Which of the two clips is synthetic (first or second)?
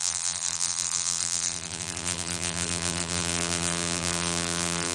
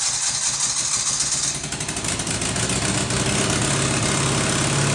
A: first